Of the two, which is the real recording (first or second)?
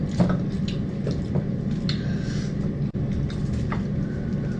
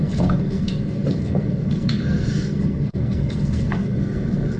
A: first